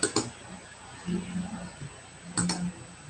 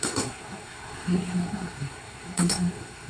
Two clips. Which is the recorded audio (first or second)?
first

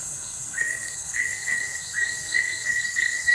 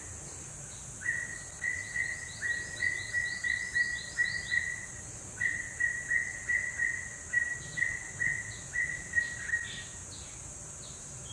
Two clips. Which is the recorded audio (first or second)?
second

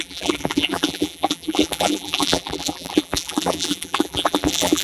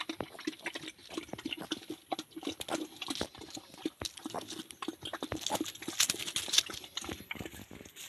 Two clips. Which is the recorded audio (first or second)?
second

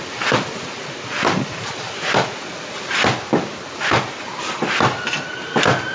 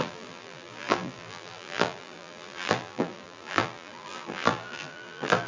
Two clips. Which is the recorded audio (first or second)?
first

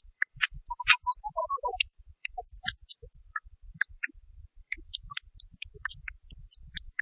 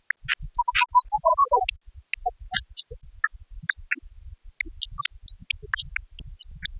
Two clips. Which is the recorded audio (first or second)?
second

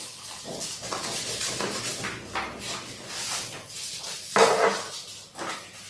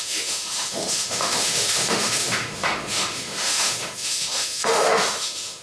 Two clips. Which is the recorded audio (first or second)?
first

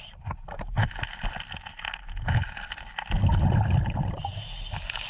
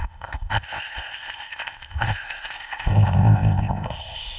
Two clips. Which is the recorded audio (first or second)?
first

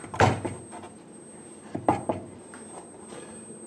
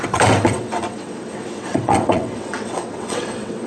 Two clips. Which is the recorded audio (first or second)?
first